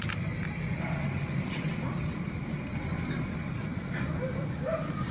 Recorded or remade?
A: recorded